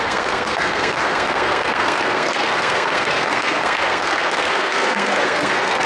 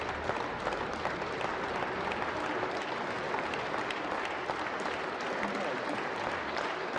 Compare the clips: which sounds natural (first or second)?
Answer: second